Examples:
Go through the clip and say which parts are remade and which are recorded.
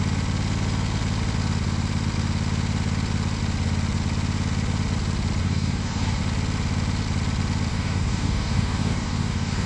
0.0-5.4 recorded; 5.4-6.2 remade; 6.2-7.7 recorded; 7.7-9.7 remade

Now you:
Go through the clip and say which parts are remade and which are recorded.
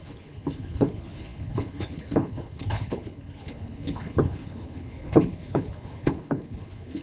0.0-7.0 remade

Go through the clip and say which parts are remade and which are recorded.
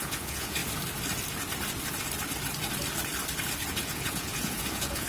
0.0-0.6 remade; 0.6-3.7 recorded; 3.7-5.1 remade